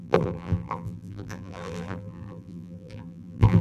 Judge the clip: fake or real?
fake